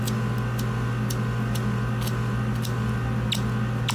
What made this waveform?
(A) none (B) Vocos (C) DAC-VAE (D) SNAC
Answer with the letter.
A